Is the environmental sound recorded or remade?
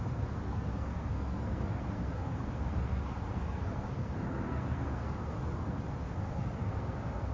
remade